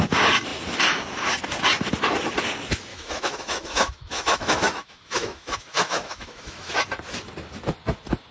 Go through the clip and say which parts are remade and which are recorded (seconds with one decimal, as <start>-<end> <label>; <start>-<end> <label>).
0.0-2.9 recorded; 2.9-6.7 remade; 6.7-8.3 recorded